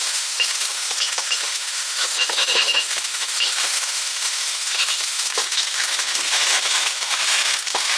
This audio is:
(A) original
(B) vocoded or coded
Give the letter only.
B